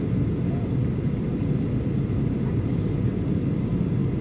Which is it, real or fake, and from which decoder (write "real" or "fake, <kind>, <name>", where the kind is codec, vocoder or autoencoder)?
real